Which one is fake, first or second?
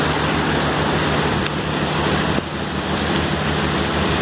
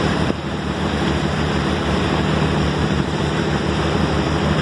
second